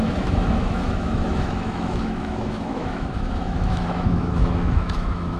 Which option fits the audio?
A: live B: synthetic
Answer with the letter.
B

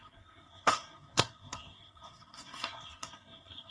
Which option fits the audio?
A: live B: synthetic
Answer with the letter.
B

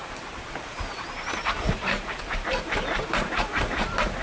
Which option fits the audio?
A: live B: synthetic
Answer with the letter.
B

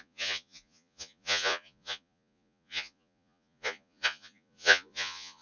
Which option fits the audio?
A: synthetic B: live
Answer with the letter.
A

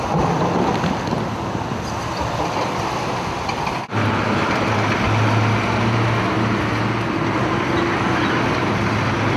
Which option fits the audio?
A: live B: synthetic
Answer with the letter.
A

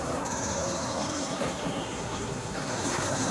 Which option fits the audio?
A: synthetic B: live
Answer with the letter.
A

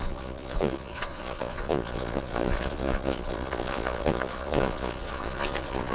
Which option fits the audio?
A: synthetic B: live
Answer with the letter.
A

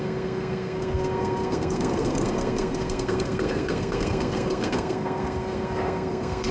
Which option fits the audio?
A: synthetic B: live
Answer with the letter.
A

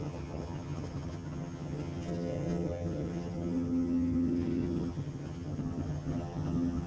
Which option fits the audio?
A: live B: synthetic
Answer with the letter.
B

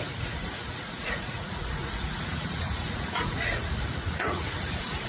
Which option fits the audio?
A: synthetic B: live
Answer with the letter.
A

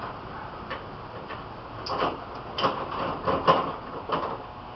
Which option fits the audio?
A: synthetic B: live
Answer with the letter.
B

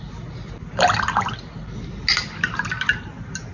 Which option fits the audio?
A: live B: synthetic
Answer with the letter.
A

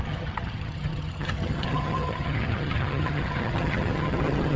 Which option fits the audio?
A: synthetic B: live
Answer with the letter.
A